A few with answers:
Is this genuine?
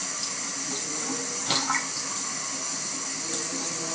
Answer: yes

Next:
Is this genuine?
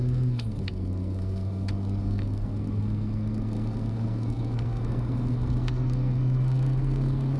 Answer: no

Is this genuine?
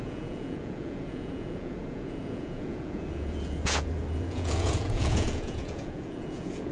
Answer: no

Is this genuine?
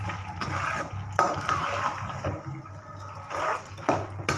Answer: yes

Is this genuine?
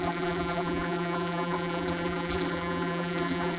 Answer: no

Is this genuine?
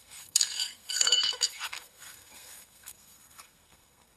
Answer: no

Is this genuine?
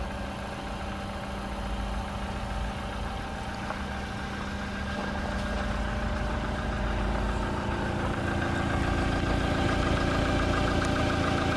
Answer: yes